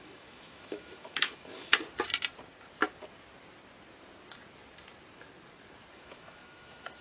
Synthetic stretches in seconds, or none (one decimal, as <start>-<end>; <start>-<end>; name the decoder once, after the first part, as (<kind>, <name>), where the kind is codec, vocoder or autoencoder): 0.0-1.7 (autoencoder, DAC-VAE); 5.9-7.0